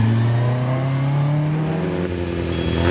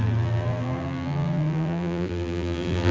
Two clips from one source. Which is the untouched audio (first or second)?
first